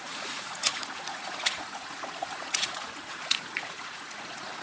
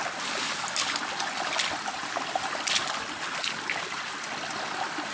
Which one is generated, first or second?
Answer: first